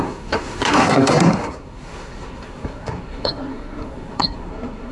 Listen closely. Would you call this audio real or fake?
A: fake